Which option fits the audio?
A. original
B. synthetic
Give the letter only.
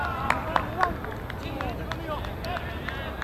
A